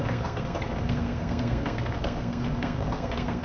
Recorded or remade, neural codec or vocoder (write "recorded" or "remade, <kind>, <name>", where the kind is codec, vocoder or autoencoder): remade, codec, SNAC